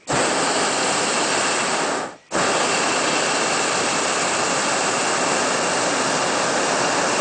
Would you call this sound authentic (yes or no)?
yes